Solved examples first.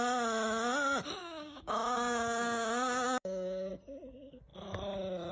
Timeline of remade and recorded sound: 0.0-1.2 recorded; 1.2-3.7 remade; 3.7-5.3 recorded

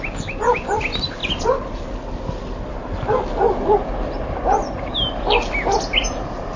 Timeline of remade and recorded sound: 0.0-6.6 recorded

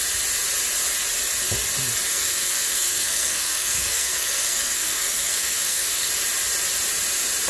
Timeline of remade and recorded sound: 0.0-2.1 recorded; 2.1-6.1 remade; 6.1-7.5 recorded

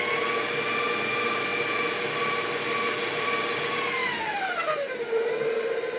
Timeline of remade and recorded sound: 0.0-6.0 recorded

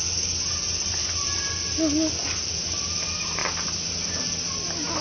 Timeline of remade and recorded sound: 0.0-5.0 recorded

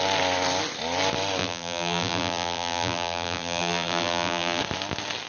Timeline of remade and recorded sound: 0.0-1.4 recorded; 1.4-4.6 remade; 4.6-5.3 recorded

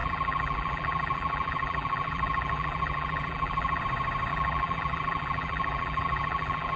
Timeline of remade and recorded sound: 0.0-3.8 remade; 3.8-4.3 recorded; 4.3-6.8 remade